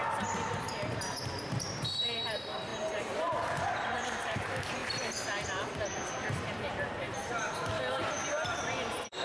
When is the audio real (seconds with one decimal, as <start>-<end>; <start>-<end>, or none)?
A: none